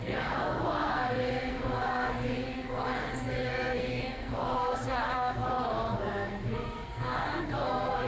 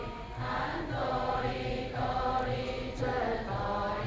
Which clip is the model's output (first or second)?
first